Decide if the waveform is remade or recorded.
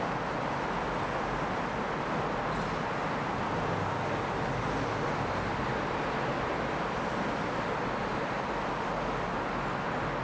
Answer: recorded